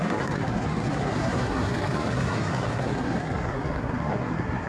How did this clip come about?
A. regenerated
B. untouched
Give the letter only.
A